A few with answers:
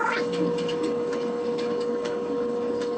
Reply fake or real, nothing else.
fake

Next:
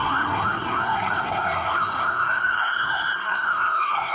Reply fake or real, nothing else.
fake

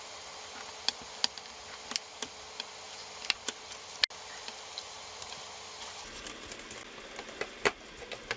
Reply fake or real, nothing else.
real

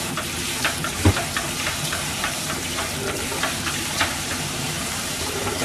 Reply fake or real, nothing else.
fake